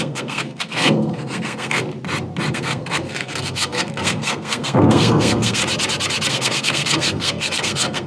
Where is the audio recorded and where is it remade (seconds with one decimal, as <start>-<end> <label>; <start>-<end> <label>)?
0.0-1.8 remade; 1.8-2.5 recorded; 2.5-5.6 remade; 5.6-6.3 recorded; 6.3-8.1 remade